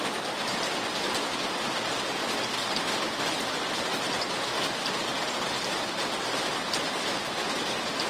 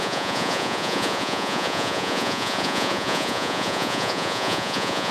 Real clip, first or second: first